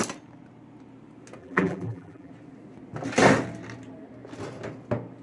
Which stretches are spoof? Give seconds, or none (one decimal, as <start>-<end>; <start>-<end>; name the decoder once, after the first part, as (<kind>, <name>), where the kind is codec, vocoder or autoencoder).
1.4-2.3 (vocoder, BigVGAN v2)